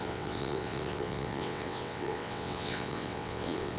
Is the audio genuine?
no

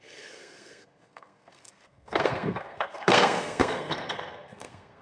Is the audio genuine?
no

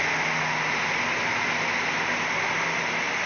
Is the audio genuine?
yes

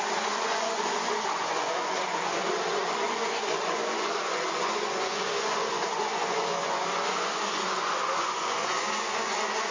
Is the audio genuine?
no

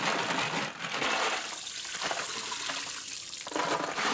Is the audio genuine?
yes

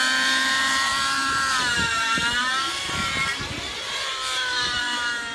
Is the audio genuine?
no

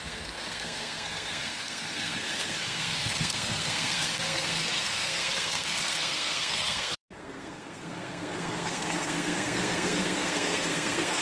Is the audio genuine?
no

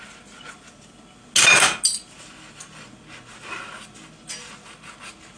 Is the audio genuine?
yes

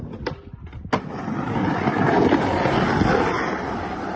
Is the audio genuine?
yes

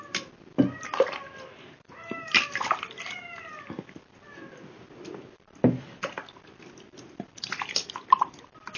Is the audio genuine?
yes